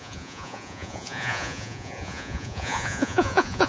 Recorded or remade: remade